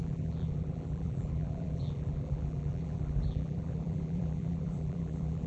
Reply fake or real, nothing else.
fake